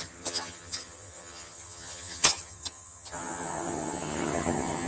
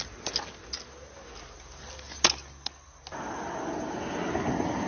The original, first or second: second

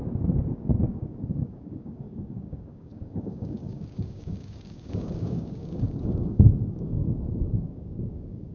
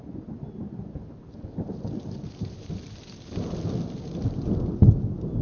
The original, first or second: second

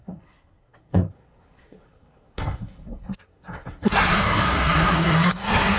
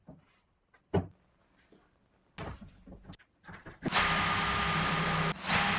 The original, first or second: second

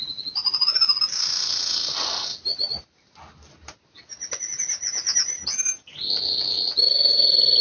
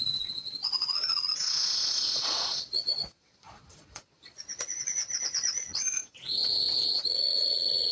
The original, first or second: first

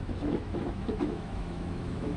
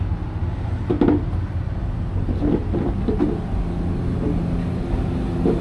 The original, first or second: second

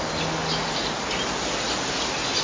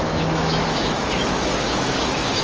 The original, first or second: first